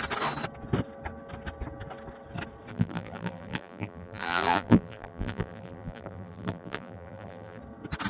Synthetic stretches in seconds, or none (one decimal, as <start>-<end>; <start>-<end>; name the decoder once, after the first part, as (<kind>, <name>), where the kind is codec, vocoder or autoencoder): 2.7-7.6 (vocoder, BigVGAN v2)